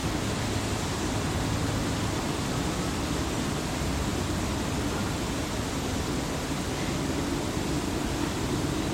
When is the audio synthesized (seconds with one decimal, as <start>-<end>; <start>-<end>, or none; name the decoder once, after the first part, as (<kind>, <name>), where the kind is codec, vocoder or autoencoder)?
none